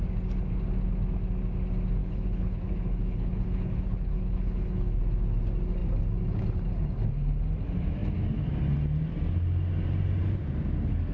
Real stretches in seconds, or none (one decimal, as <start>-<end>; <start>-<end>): 0.0-2.0; 5.0-11.1